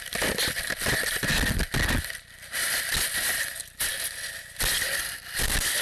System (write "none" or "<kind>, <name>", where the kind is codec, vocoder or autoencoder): none